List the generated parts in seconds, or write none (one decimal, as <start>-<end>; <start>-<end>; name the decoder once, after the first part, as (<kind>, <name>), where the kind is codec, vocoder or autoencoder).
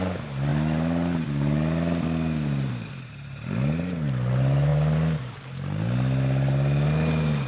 none